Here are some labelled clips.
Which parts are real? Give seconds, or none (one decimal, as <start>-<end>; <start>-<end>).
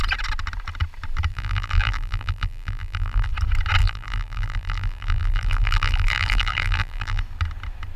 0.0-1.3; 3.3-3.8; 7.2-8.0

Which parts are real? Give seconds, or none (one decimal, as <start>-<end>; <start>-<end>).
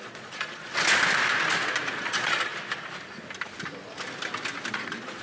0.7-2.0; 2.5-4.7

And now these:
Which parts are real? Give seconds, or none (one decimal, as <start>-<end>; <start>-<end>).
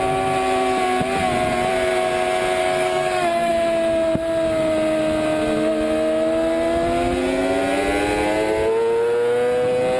0.0-2.6; 3.5-10.0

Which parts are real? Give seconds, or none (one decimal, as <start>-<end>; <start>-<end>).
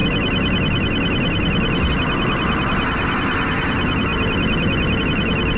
0.0-5.6